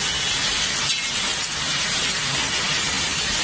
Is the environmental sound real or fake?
real